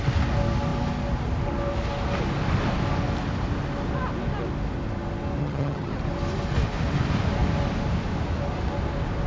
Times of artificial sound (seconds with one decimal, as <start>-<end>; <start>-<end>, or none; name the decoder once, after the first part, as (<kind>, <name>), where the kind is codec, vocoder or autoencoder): 5.4-5.9 (vocoder, HiFi-GAN)